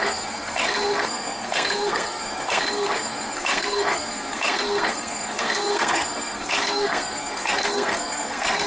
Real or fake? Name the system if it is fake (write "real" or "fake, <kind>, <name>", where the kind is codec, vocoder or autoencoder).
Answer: fake, codec, SNAC